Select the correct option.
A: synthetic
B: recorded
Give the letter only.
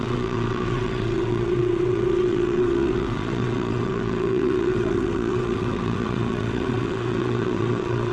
A